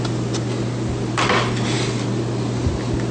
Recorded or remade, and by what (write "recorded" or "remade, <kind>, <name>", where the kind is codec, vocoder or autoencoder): recorded